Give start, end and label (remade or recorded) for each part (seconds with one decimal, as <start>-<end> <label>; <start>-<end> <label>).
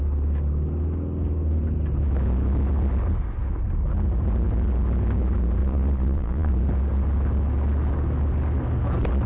0.0-5.6 recorded; 5.6-6.5 remade; 6.5-9.3 recorded